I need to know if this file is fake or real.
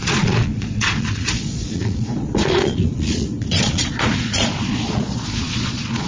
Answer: fake